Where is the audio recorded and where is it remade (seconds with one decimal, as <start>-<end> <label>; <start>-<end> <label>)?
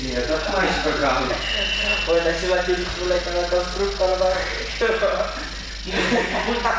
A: 0.0-6.8 recorded